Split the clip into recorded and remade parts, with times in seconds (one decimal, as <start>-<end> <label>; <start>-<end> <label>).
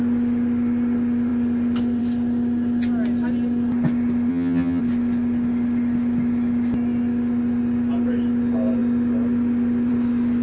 0.0-4.3 recorded; 4.3-4.8 remade; 4.8-10.4 recorded